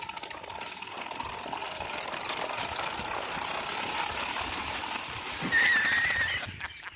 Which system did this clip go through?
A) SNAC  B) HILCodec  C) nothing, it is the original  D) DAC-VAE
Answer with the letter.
C